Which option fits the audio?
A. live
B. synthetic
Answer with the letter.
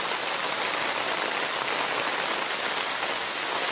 A